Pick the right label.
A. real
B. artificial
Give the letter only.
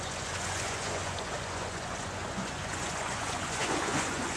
B